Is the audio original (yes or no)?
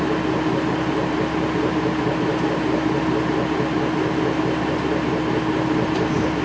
yes